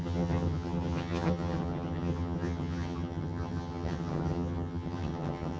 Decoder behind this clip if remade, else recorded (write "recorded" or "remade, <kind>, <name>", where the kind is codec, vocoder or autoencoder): remade, vocoder, HiFi-GAN